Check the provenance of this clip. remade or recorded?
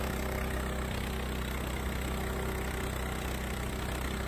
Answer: recorded